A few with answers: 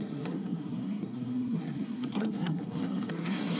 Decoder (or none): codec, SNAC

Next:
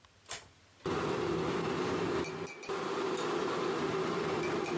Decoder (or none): vocoder, BigVGAN v2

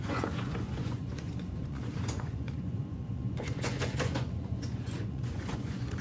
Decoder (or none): vocoder, Vocos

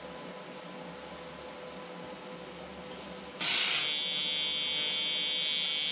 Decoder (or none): none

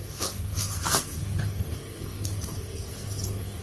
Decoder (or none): codec, SNAC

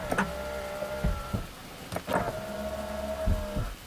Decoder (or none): none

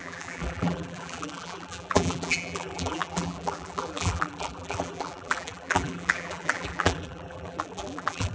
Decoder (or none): vocoder, BigVGAN v2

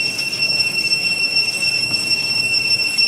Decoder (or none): codec, DAC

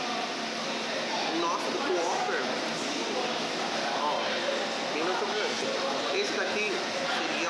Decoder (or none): none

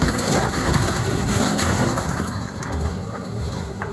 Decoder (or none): codec, SNAC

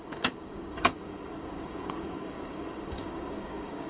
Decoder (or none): codec, DAC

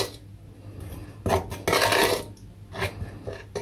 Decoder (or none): none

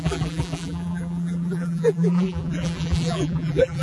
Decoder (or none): vocoder, BigVGAN v2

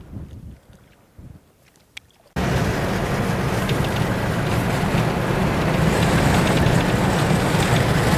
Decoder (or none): none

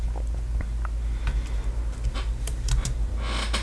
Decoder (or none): none